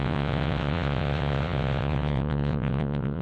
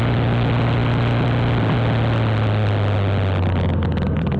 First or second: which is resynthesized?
first